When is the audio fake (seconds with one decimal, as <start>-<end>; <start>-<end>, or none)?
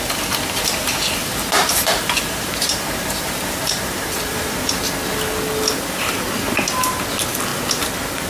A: 1.2-4.9